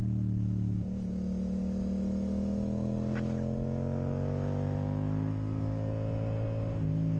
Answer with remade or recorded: recorded